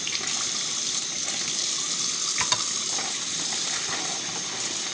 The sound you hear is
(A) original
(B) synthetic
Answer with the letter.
A